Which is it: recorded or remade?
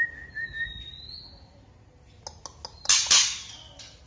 recorded